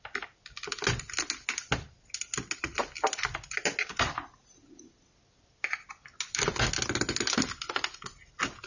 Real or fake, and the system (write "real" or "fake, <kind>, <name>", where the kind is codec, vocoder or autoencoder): real